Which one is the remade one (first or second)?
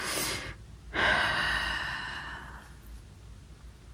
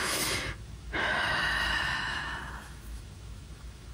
second